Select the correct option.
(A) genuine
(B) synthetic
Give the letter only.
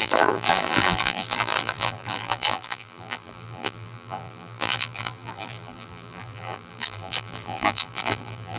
B